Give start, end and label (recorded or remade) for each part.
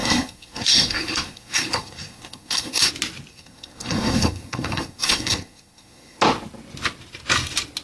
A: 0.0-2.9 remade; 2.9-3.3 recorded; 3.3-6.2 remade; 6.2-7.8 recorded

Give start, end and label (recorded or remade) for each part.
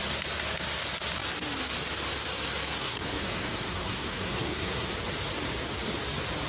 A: 0.0-2.8 recorded; 2.8-4.9 remade; 4.9-6.5 recorded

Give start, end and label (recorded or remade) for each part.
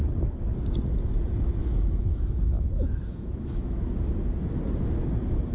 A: 0.0-1.6 recorded; 1.6-3.8 remade; 3.8-5.5 recorded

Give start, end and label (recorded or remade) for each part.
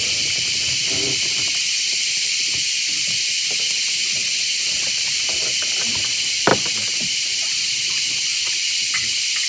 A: 0.0-9.5 recorded